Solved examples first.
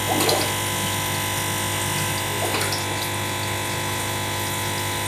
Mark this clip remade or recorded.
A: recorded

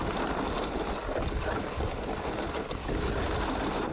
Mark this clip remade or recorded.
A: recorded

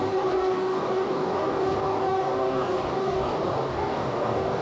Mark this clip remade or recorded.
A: remade